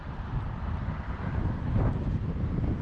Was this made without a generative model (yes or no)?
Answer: yes